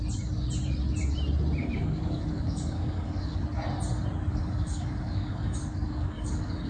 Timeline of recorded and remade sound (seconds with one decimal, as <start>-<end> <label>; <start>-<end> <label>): 0.0-1.6 recorded; 1.6-3.4 remade; 3.4-4.3 recorded; 4.3-6.7 remade